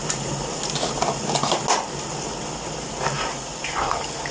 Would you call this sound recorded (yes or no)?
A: yes